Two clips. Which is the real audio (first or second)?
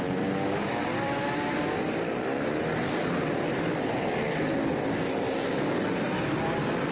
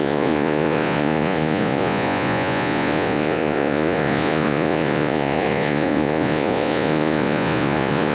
first